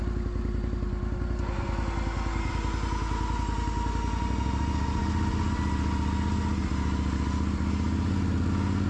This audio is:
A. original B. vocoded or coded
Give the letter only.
A